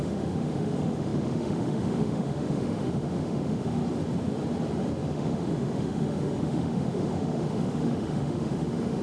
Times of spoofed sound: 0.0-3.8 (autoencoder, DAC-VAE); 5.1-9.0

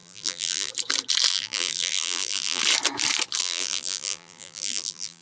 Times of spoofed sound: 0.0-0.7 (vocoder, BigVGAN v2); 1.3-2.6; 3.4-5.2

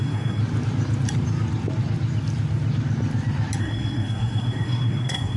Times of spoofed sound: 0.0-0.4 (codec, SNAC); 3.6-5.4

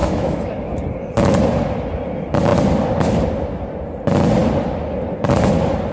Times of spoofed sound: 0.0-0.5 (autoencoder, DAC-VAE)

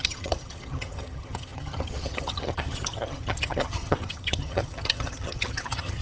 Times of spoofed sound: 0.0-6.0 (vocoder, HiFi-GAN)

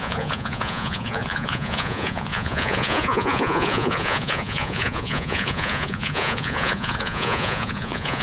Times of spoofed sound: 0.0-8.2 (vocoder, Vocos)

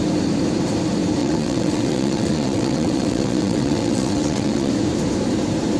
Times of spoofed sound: 1.2-4.7 (vocoder, WaveNeXt)